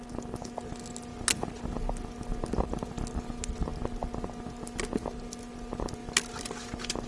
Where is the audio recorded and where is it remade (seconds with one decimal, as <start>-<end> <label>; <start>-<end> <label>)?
0.0-7.1 recorded